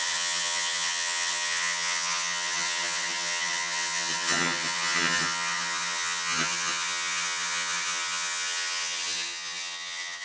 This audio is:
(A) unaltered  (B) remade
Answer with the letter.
B